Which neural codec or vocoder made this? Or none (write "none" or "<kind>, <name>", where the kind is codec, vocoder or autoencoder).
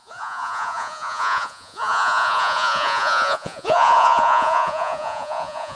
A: vocoder, Vocos